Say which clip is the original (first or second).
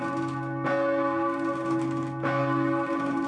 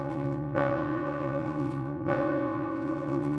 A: first